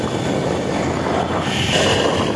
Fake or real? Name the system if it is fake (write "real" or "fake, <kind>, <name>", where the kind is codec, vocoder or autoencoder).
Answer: real